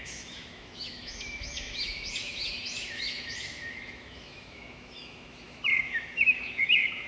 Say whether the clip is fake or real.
fake